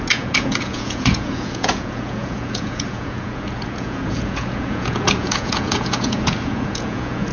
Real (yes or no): no